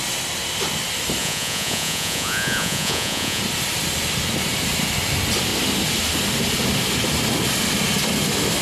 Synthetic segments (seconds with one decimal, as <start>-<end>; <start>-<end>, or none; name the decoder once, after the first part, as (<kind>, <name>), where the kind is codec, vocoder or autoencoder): 1.2-3.4 (vocoder, Vocos)